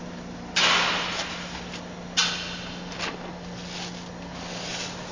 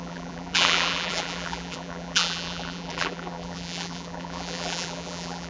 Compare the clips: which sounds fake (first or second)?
second